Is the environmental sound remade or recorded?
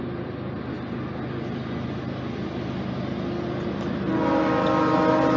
recorded